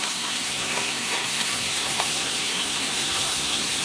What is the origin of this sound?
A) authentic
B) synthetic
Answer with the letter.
B